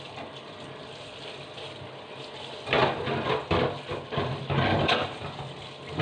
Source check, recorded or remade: recorded